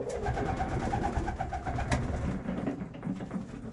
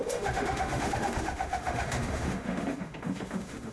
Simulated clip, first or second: second